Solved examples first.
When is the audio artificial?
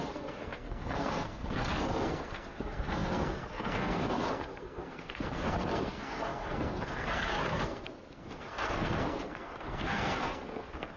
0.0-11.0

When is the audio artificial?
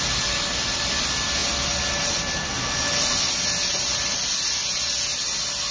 none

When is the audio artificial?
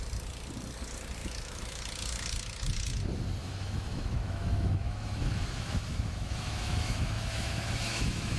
1.2-1.8; 3.4-8.4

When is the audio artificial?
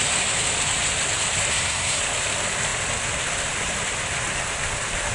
1.5-2.0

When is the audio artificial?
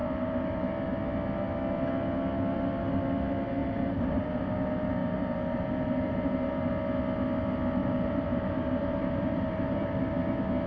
0.0-0.6; 3.6-4.2; 5.0-6.7; 7.8-10.0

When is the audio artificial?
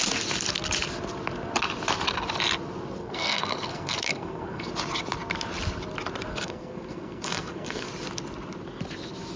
3.0-4.7; 6.3-7.9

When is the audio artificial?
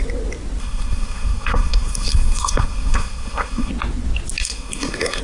0.6-3.7; 4.4-5.2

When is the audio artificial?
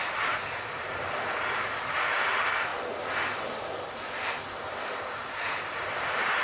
0.0-2.7; 5.0-6.4